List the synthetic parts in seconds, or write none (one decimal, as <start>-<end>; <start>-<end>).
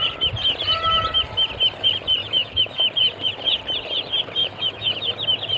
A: 2.2-2.9; 4.4-5.1